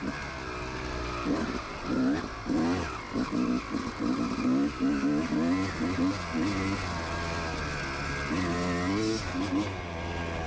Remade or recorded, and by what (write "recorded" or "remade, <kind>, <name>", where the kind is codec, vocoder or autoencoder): recorded